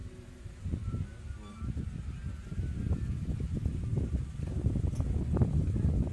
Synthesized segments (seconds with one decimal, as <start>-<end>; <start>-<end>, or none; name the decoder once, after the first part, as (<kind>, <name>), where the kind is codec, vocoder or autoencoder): none